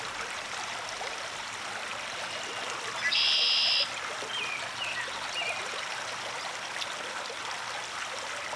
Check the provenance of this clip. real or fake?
real